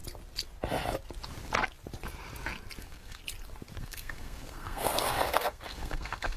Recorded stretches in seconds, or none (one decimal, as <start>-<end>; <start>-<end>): 0.0-2.8; 3.2-3.8